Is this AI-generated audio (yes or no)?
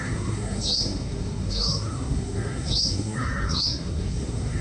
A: yes